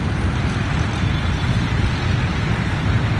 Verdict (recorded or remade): remade